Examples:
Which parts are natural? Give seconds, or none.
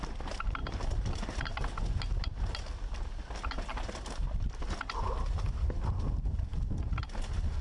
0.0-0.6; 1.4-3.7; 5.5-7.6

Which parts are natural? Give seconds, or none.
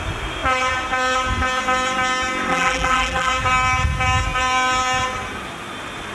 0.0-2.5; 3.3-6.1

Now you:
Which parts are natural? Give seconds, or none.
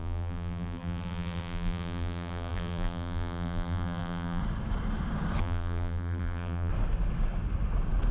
4.4-5.4; 6.7-8.1